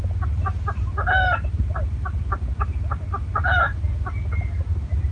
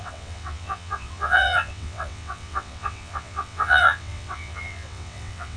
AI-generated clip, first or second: second